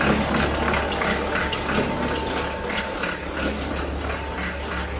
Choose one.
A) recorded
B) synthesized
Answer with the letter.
A